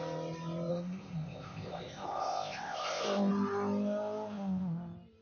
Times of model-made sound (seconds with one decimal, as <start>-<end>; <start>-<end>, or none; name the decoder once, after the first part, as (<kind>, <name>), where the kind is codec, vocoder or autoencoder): 0.7-3.3 (codec, ZipCodec)